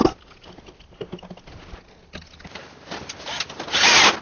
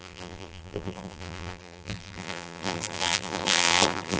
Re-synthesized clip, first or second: second